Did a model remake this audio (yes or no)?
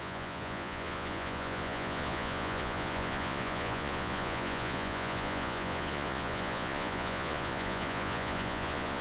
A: yes